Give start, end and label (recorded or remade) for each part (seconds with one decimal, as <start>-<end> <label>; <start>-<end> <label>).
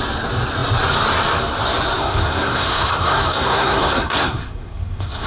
0.0-2.0 recorded; 2.0-5.3 remade